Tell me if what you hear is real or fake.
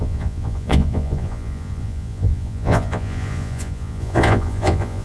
fake